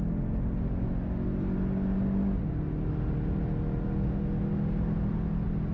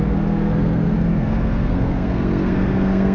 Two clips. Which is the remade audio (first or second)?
second